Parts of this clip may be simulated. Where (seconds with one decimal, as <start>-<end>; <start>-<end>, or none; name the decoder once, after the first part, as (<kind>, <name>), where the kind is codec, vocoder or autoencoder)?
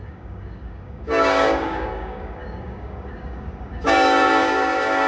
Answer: 0.0-5.1 (codec, DAC)